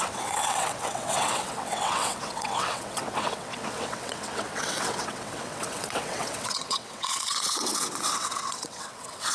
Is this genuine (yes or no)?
no